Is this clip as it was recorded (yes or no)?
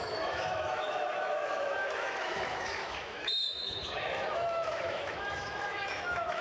no